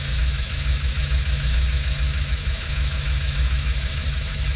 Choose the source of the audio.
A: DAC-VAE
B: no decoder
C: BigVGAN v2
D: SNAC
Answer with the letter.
A